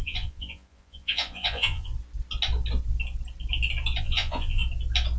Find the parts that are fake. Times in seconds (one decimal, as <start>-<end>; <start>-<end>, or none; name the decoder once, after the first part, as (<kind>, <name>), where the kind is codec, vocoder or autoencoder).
0.0-1.9 (vocoder, Vocos); 4.0-4.6

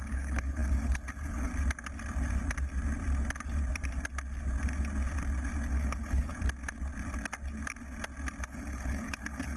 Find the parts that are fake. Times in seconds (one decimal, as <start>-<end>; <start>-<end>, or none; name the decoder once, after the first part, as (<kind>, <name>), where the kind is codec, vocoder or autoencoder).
0.0-1.5 (codec, HILCodec); 5.7-6.3; 8.4-9.6

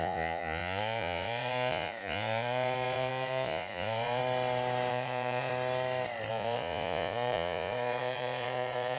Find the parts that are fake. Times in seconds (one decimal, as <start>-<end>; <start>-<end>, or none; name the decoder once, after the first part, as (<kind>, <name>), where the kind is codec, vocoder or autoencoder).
0.0-4.2 (vocoder, Vocos); 4.9-5.5; 6.3-9.0

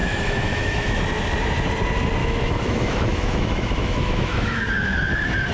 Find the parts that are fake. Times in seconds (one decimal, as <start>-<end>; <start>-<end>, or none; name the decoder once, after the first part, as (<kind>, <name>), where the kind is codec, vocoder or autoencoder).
0.0-1.0 (autoencoder, DAC-VAE); 2.2-4.6

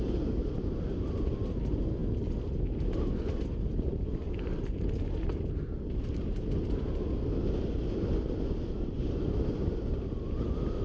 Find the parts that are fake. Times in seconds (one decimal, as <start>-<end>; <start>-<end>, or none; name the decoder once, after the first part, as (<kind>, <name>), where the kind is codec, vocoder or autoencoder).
none

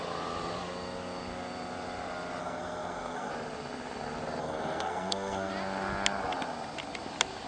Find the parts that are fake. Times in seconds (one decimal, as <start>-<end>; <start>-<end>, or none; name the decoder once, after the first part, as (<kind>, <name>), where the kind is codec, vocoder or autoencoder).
2.4-3.3 (codec, SNAC); 4.4-5.5